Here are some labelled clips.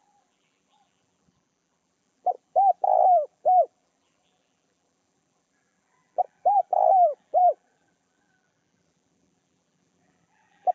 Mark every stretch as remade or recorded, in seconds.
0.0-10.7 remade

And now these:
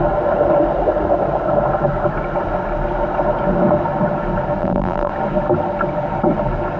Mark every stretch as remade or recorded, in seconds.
0.0-4.6 recorded; 4.6-5.1 remade; 5.1-6.8 recorded

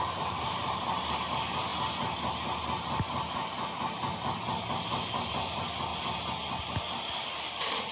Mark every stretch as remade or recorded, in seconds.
0.0-1.7 remade; 1.7-5.3 recorded; 5.3-5.9 remade; 5.9-6.6 recorded; 6.6-7.9 remade

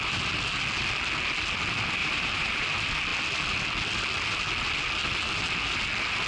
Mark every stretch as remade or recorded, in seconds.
0.0-2.0 recorded; 2.0-2.6 remade; 2.6-6.3 recorded

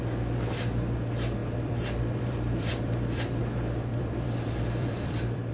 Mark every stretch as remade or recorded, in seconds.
0.0-1.4 recorded; 1.4-3.4 remade; 3.4-3.9 recorded; 3.9-5.5 remade

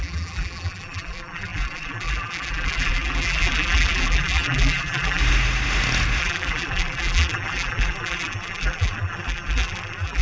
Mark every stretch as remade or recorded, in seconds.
0.0-5.2 remade; 5.2-6.2 recorded; 6.2-10.2 remade

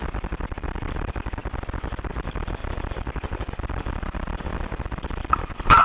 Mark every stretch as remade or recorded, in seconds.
0.0-1.4 remade; 1.4-2.0 recorded; 2.0-5.8 remade

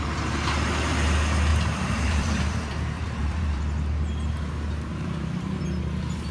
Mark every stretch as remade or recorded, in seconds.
0.0-1.5 recorded; 1.5-3.6 remade; 3.6-4.9 recorded; 4.9-5.6 remade; 5.6-6.3 recorded